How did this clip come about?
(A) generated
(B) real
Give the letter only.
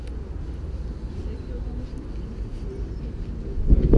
B